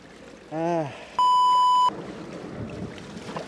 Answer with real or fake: real